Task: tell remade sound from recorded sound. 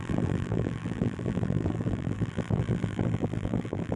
remade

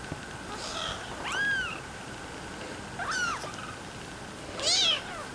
recorded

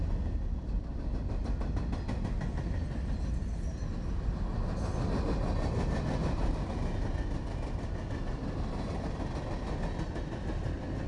recorded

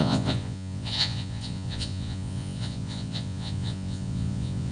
remade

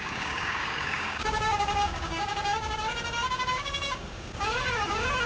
remade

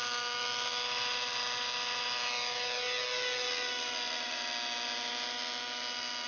recorded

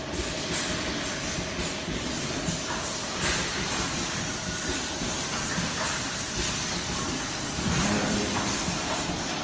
recorded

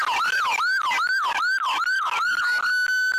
recorded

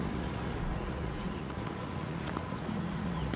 remade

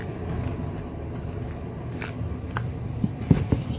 recorded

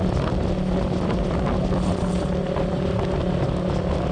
recorded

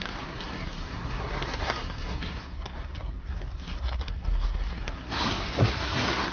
remade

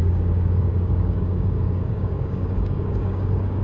remade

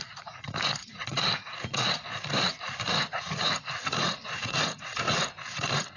remade